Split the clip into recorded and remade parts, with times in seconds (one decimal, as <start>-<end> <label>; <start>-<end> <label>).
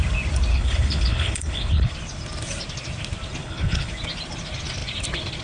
0.0-0.5 recorded; 0.5-1.9 remade; 1.9-3.4 recorded; 3.4-3.9 remade; 3.9-5.4 recorded